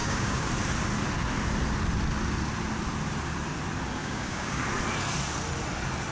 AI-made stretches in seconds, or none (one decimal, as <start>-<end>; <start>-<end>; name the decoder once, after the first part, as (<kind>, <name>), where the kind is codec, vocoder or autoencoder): 0.0-0.5 (codec, DAC); 4.0-4.6